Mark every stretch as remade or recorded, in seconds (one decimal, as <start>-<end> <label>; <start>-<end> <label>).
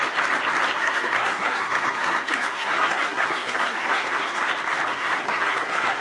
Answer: 0.0-0.8 recorded; 0.8-4.4 remade; 4.4-4.9 recorded; 4.9-6.0 remade